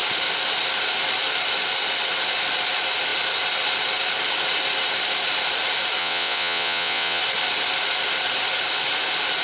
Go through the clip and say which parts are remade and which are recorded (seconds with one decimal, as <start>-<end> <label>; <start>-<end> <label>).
0.0-6.0 recorded; 6.0-7.2 remade; 7.2-9.4 recorded